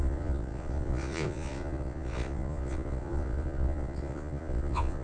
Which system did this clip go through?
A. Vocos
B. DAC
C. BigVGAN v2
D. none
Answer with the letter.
A